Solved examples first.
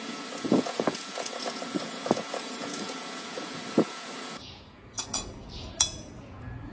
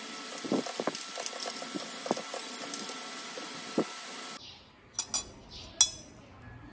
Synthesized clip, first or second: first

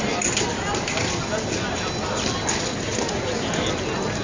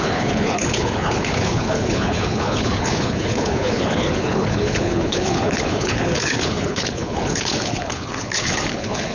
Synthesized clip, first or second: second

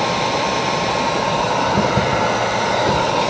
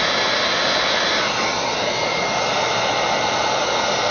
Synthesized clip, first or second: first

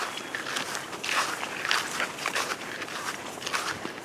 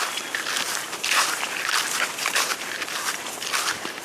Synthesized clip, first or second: second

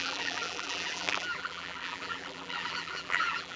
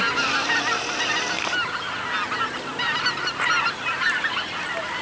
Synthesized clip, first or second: first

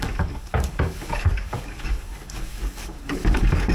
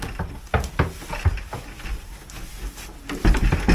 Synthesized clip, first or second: first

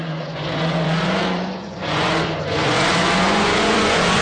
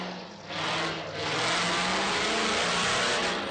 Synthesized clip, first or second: first